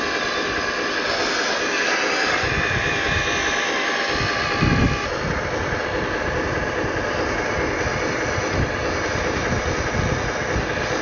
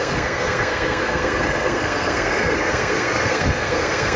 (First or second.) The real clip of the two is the first